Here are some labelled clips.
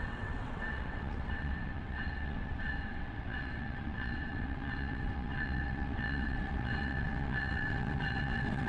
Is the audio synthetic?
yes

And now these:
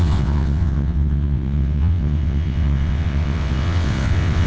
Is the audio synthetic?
yes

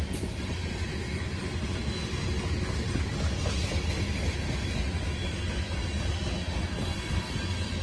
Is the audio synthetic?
no